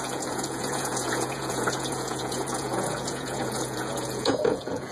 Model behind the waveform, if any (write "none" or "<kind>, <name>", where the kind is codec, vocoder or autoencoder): vocoder, Vocos